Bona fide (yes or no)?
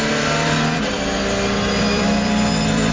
no